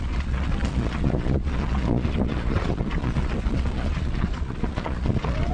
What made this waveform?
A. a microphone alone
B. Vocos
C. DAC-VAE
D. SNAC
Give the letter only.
B